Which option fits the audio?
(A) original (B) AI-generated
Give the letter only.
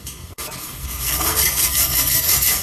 B